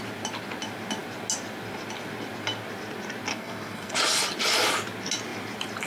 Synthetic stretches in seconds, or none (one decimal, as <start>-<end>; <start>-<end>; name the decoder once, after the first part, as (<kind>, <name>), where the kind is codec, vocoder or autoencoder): 3.3-3.9 (codec, SNAC)